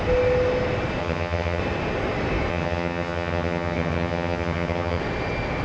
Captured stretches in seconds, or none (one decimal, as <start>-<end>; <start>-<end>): 0.0-1.0; 1.6-2.5; 5.0-5.6